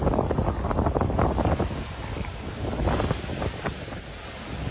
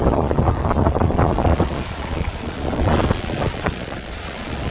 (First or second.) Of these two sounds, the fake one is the second